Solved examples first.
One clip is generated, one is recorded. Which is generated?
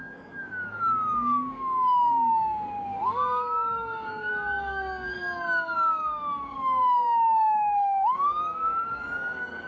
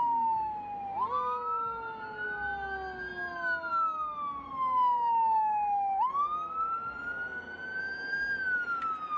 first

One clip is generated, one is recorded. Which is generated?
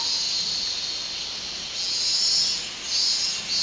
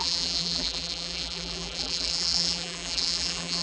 second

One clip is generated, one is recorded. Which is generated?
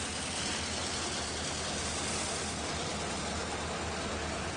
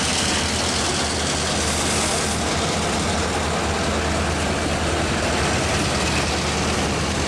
first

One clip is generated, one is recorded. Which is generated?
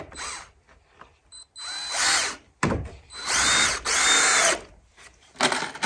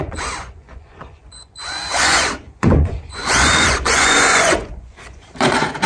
second